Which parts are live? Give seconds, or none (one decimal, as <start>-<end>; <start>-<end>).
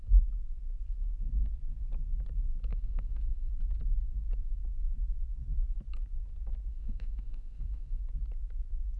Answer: 0.0-2.7; 3.5-6.7; 8.0-9.0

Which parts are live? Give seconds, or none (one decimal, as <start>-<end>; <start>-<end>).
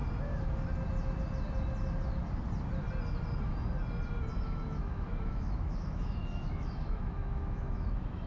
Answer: 0.0-4.4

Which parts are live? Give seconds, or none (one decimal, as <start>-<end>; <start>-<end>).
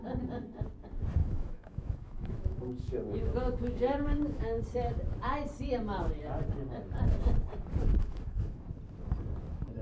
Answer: 0.0-1.2; 4.6-7.9; 8.7-9.8